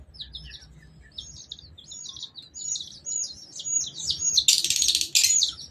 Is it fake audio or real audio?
real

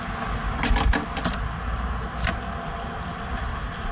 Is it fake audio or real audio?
real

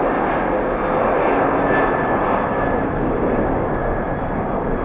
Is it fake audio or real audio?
real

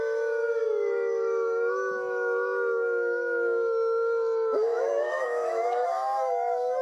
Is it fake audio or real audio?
fake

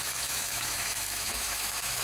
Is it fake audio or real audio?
fake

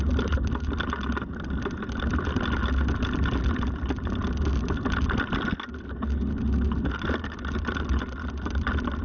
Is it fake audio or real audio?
real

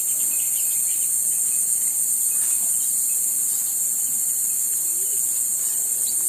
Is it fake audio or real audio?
real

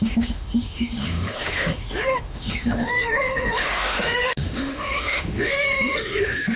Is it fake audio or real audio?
fake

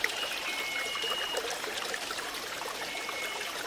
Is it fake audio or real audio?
real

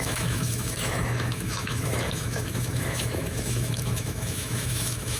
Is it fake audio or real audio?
fake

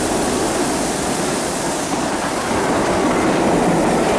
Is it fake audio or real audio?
real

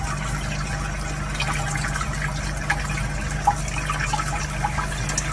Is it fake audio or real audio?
real